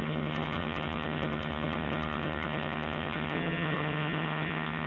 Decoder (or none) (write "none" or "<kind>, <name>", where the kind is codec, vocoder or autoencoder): vocoder, HiFi-GAN